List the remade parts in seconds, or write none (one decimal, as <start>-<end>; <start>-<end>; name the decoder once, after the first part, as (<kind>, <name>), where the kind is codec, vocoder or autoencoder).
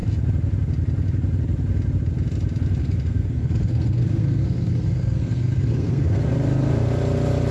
2.8-6.2 (codec, SNAC)